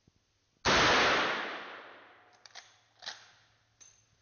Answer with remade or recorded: recorded